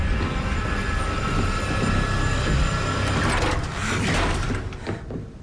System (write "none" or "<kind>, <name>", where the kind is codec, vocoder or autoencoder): none